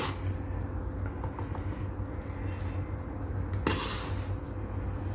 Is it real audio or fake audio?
real